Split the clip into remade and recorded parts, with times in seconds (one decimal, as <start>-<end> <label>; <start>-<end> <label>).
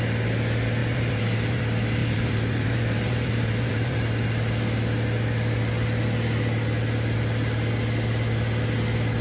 0.0-0.8 recorded; 0.8-1.6 remade; 1.6-2.0 recorded; 2.0-4.0 remade; 4.0-9.2 recorded